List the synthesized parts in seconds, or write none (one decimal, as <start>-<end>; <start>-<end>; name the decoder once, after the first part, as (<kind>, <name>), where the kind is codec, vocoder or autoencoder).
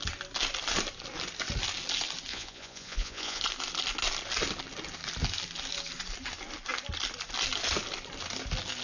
2.3-3.4 (vocoder, Vocos)